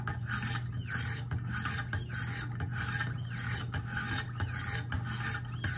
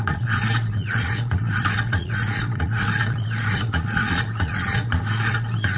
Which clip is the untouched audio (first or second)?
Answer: first